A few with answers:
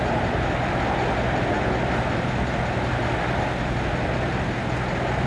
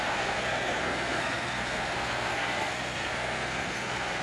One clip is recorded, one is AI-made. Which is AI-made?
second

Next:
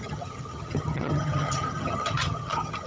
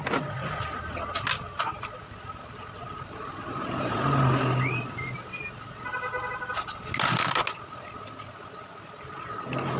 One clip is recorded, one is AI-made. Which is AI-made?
first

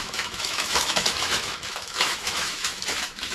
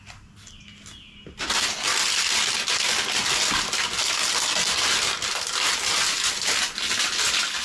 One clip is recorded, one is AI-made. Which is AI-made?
first